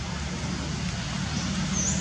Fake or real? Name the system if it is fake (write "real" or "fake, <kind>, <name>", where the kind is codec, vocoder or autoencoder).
real